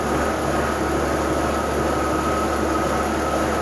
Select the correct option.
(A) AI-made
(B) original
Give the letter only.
B